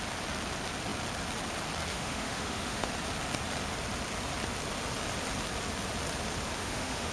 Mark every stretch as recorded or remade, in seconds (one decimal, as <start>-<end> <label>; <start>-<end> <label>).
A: 0.0-1.9 recorded; 1.9-2.9 remade; 2.9-6.6 recorded; 6.6-7.1 remade